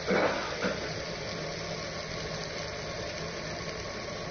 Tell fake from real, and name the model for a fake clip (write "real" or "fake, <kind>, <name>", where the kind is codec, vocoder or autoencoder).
real